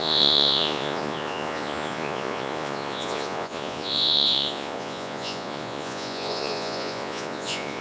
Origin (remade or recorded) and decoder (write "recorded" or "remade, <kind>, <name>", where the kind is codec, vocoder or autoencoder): remade, vocoder, Vocos